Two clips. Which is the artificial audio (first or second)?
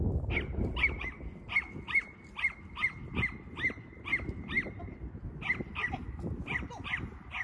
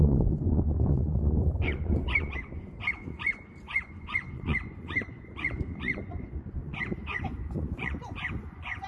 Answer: second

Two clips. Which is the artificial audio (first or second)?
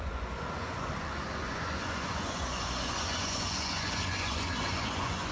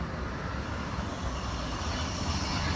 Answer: first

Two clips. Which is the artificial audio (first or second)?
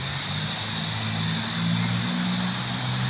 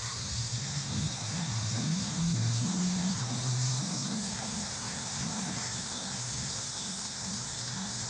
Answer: second